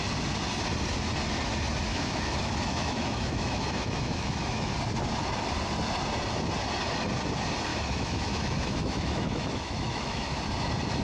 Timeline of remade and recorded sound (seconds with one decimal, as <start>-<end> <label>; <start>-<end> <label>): 0.0-1.9 recorded; 1.9-4.7 remade; 4.7-7.7 recorded; 7.7-10.3 remade; 10.3-11.0 recorded